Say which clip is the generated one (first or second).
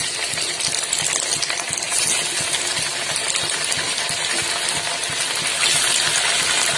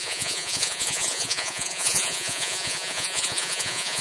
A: second